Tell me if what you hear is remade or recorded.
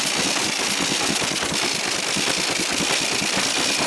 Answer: recorded